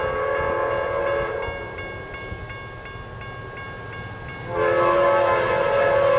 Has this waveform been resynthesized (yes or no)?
no